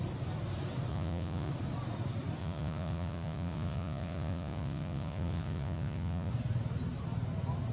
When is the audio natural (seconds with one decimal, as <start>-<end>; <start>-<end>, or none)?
0.0-0.9; 1.5-2.4; 6.3-7.7